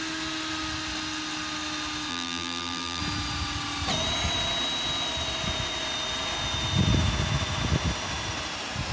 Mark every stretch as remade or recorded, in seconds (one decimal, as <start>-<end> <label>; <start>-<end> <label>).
0.0-2.1 recorded; 2.1-3.0 remade; 3.0-8.9 recorded